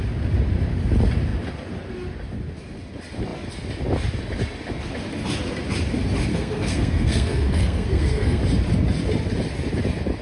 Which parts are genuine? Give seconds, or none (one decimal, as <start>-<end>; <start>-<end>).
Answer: 0.0-6.3; 8.4-10.2